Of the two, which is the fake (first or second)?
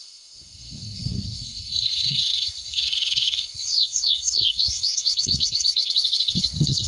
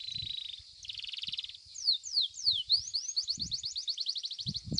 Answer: first